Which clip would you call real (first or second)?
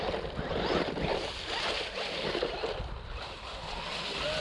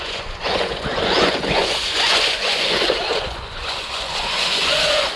first